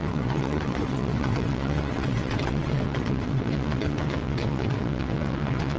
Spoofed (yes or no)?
yes